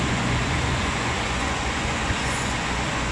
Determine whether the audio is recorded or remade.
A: remade